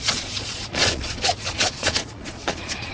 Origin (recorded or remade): remade